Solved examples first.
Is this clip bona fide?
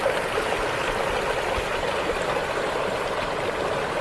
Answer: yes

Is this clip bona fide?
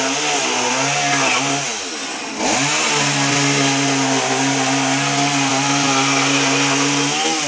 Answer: yes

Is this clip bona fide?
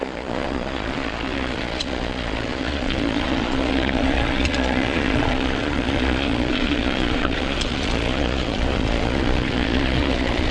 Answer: no